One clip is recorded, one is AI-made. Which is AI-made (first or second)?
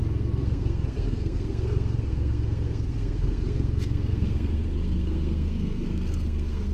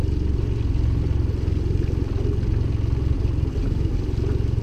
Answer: first